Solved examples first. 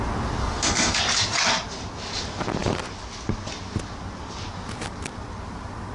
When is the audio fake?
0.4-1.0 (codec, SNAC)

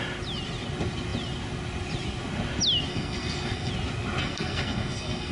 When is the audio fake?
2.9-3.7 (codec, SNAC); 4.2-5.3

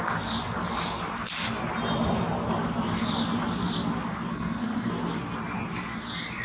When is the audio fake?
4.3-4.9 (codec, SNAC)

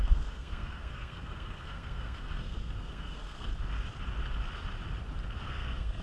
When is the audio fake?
0.0-3.5 (codec, SNAC); 5.4-6.0

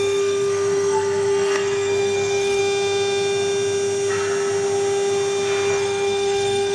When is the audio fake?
0.0-2.6 (codec, SNAC); 5.7-6.7

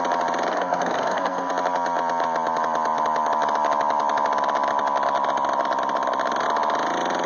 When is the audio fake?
0.5-1.5 (codec, SNAC)

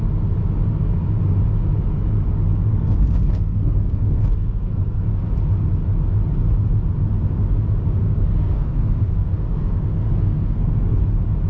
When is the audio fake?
2.7-5.0 (codec, SNAC); 8.0-11.0

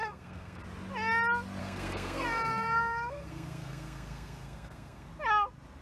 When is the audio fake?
0.0-0.6 (codec, SNAC); 1.6-5.1